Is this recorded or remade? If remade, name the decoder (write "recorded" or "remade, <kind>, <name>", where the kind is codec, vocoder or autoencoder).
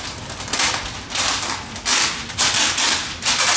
recorded